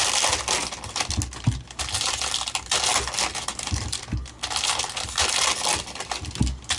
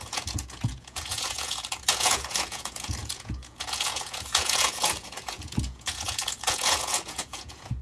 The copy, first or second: second